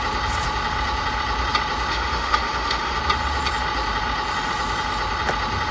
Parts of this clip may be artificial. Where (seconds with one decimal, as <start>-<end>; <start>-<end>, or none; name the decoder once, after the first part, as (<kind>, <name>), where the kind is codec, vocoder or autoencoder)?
1.9-3.0 (autoencoder, DAC-VAE)